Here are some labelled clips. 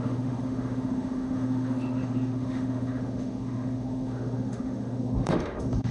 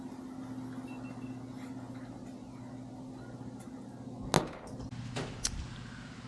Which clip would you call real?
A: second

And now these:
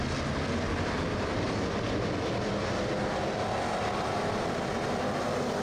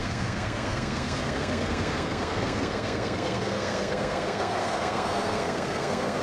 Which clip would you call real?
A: first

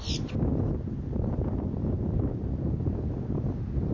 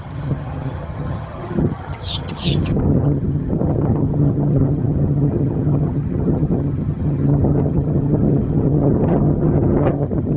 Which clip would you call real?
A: first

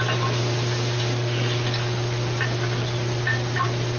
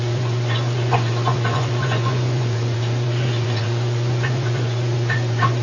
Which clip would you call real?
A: first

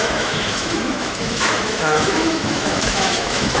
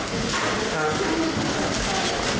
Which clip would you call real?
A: second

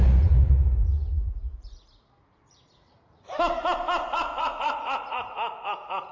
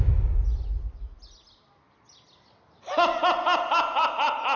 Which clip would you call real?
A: second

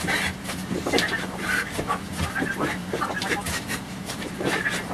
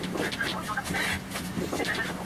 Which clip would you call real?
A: second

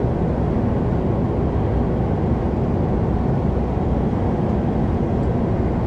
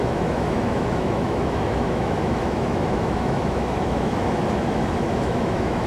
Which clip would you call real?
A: first